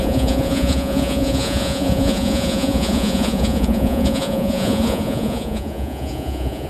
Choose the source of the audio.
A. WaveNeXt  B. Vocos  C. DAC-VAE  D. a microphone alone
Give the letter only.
B